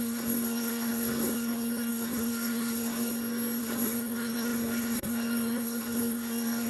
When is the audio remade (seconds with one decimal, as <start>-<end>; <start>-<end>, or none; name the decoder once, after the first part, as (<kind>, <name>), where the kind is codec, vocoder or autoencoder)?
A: 0.0-3.1 (codec, SNAC); 3.6-6.7